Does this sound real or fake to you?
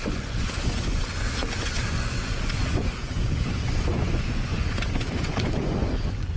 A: fake